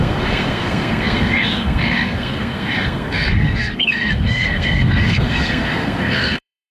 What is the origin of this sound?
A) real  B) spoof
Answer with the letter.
B